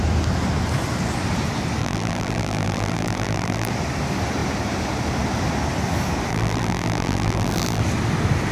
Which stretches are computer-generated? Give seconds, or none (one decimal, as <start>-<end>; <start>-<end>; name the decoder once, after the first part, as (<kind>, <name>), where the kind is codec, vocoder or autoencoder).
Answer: 1.8-3.7 (vocoder, BigVGAN v2); 6.3-7.8

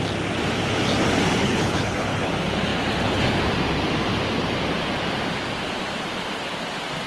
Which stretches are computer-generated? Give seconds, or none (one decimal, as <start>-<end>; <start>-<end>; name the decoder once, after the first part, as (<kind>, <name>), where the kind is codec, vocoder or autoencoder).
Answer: 1.4-2.3 (codec, HILCodec)

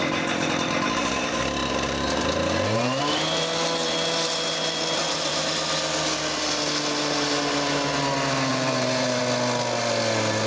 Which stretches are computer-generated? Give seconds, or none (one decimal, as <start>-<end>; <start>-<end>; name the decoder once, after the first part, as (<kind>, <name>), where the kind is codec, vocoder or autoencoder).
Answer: 1.6-3.0 (vocoder, BigVGAN v2); 5.0-5.5; 8.5-9.2